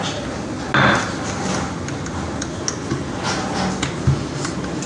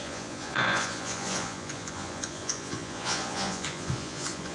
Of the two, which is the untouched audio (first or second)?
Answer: first